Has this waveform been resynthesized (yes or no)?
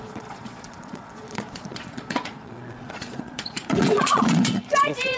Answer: yes